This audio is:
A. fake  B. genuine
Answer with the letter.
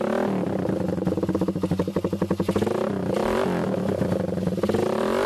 B